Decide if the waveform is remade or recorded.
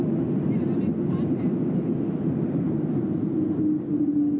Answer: recorded